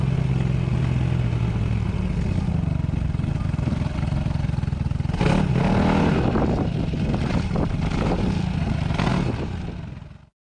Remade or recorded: recorded